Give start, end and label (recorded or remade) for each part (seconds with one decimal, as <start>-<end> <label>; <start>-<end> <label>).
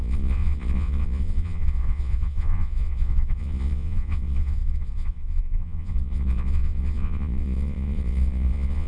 0.0-8.9 remade